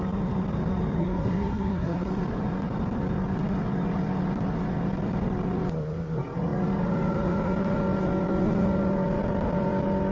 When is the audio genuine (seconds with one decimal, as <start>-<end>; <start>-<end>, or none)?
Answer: 0.0-1.0; 2.1-10.1